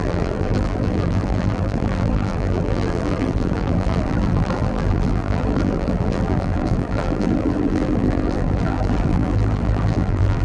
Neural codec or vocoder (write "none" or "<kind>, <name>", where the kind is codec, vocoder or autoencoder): vocoder, BigVGAN v2